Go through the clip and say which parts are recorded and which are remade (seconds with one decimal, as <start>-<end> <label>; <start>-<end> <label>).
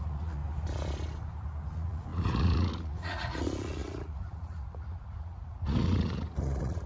0.0-0.4 remade; 0.4-1.7 recorded; 1.7-6.9 remade